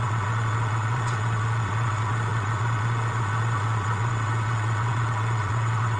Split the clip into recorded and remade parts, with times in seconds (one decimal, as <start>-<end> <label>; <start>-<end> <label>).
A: 0.0-6.0 remade